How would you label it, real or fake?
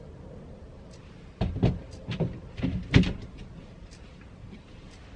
real